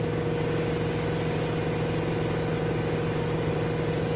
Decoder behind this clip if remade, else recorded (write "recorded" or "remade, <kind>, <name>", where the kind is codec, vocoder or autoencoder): recorded